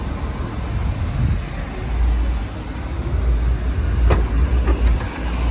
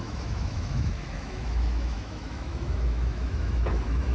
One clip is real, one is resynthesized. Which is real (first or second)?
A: first